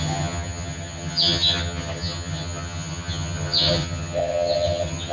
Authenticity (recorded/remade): remade